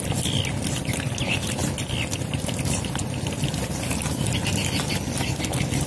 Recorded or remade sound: recorded